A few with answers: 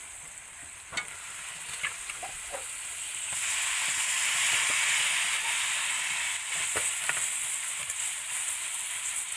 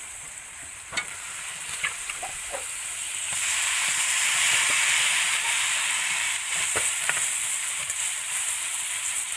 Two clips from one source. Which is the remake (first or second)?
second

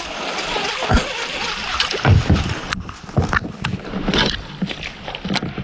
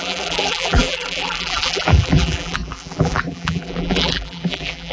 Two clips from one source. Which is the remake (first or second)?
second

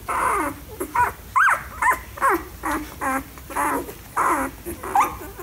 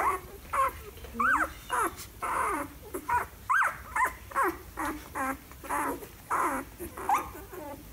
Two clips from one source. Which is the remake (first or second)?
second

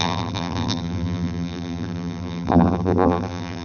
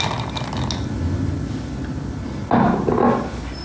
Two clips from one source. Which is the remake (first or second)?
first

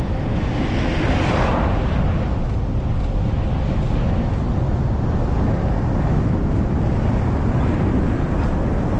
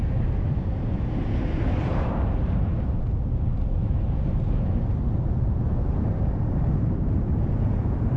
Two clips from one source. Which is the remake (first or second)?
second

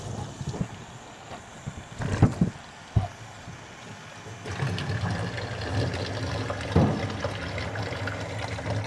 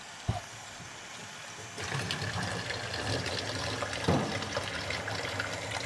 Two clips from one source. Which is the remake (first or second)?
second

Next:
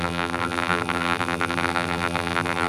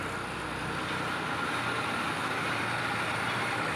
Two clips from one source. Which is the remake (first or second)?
first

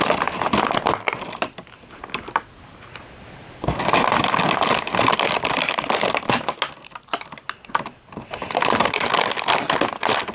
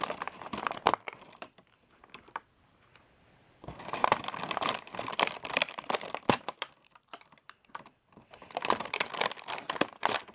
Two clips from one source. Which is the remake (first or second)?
second